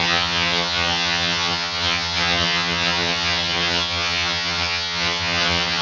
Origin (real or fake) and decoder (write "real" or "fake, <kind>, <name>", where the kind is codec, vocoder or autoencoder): fake, vocoder, HiFi-GAN